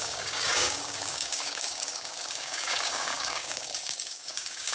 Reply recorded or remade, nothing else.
remade